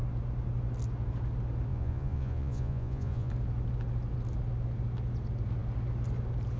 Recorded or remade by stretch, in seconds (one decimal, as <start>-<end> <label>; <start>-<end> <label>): 0.0-1.7 recorded; 1.7-3.3 remade; 3.3-6.6 recorded